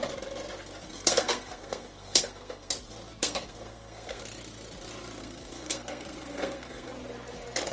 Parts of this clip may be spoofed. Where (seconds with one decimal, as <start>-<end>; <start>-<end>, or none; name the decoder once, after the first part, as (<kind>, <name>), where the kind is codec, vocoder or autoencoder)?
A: 0.8-2.7 (codec, SNAC); 3.2-4.2; 5.2-6.9